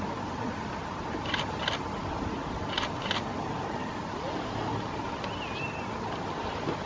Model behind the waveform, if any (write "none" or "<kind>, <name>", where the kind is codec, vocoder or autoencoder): none